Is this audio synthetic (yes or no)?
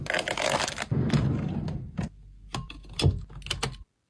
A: no